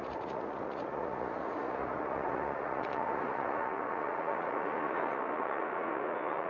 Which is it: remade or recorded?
remade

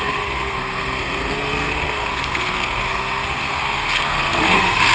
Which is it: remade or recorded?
remade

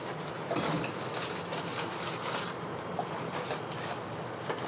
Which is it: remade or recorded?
recorded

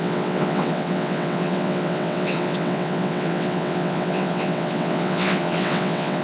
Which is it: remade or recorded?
remade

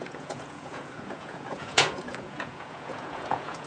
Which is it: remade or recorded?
remade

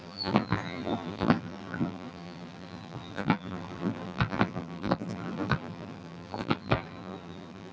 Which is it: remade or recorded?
remade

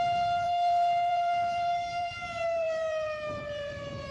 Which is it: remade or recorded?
remade